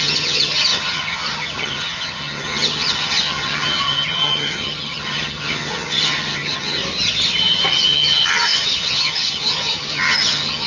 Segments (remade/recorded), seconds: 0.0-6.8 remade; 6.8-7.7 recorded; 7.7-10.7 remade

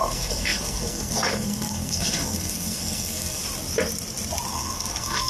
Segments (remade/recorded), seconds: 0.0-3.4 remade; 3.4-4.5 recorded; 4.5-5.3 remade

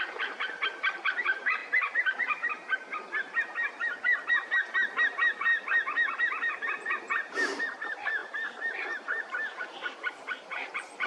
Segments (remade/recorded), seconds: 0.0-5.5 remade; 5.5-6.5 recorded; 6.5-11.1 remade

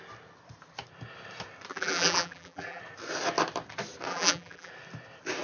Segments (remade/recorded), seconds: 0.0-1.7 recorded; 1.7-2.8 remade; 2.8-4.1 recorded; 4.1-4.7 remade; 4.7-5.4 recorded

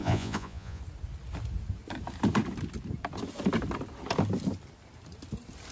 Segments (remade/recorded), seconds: 0.0-0.8 remade; 0.8-5.7 recorded

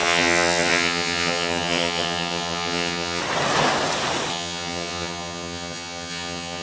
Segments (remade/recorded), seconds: 0.0-3.2 remade; 3.2-4.3 recorded; 4.3-6.6 remade

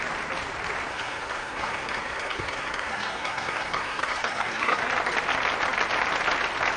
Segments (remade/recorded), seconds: 0.0-0.9 recorded; 0.9-4.8 remade; 4.8-6.8 recorded

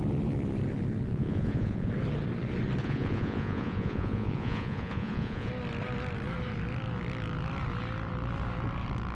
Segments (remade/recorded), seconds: 0.0-1.1 recorded; 1.1-1.9 remade; 1.9-2.8 recorded; 2.8-5.5 remade; 5.5-9.1 recorded